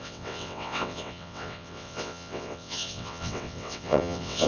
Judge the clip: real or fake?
fake